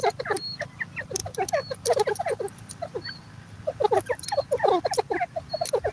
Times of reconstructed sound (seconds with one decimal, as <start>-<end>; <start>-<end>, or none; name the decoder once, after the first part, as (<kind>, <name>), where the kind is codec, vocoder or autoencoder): none

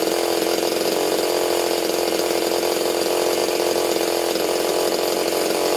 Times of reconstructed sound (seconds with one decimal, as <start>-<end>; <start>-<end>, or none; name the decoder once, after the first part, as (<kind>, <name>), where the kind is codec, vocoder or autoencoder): none